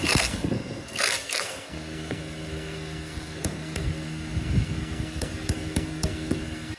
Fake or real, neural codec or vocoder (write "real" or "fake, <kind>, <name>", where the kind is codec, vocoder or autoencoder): fake, codec, SNAC